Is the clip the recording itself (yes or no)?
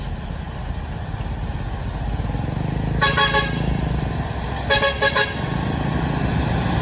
yes